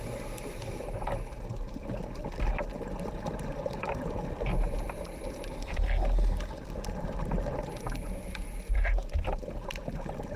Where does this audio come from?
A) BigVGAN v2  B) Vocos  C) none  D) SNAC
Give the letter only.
C